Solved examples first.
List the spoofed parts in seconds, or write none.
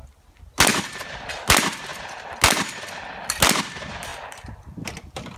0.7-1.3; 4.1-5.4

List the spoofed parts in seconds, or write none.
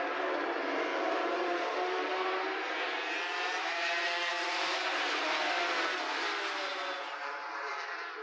0.9-3.2; 4.3-5.2; 6.7-7.7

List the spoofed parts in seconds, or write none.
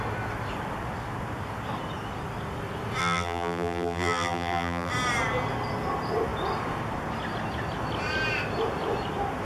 3.0-4.9